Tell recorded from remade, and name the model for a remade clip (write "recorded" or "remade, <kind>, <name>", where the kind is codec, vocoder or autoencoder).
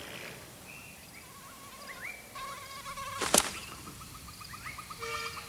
remade, vocoder, BigVGAN v2